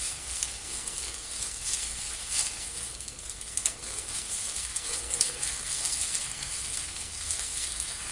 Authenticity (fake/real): fake